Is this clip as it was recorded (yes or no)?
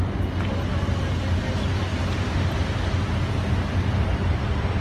yes